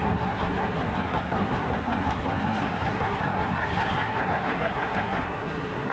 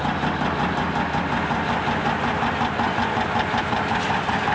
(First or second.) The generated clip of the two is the first